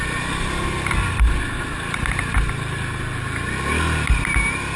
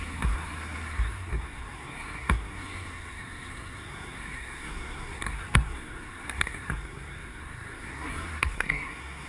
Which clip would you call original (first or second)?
first